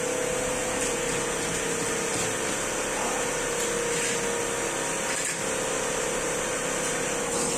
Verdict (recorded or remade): recorded